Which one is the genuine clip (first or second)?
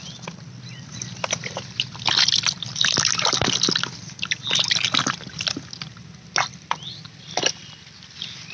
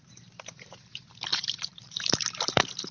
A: first